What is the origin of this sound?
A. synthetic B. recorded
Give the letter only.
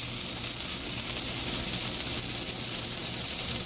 B